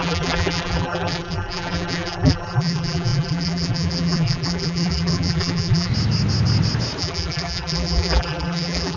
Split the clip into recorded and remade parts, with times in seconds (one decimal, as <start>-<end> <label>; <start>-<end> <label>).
0.0-5.9 remade; 5.9-7.0 recorded; 7.0-9.0 remade